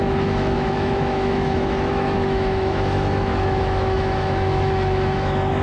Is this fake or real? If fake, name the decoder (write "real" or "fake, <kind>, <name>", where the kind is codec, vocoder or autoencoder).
fake, autoencoder, DAC-VAE